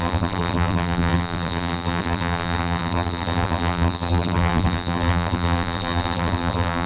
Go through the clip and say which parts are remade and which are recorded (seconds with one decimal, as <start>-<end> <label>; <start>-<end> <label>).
0.0-6.9 remade